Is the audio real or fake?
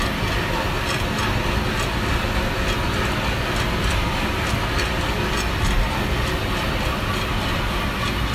real